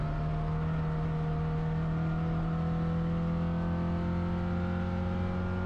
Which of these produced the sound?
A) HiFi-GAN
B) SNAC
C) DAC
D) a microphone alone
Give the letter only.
D